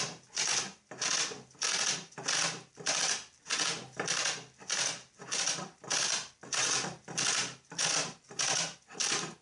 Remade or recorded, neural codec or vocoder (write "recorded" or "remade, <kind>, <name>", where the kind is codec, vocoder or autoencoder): remade, vocoder, BigVGAN v2